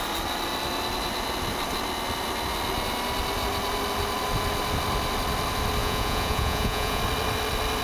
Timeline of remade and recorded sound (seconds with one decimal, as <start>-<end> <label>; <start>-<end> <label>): 0.0-5.8 recorded; 5.8-7.0 remade; 7.0-7.8 recorded